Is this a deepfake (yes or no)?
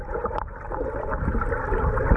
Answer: no